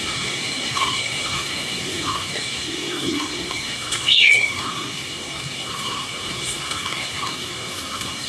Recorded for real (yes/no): no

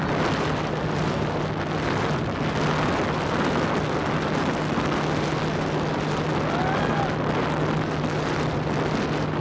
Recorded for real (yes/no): yes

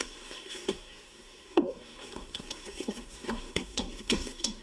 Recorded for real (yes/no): no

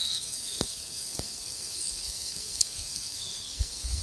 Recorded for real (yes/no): no